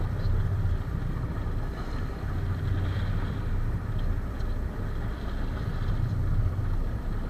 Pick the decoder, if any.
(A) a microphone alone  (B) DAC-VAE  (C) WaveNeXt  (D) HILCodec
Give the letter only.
A